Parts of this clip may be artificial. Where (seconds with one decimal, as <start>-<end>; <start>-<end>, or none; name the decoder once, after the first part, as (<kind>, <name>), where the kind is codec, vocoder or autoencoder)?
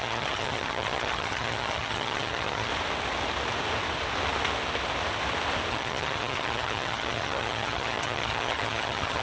0.0-2.7 (vocoder, HiFi-GAN); 5.7-9.2